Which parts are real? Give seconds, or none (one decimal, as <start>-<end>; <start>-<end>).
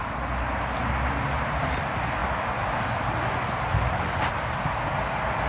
0.0-5.5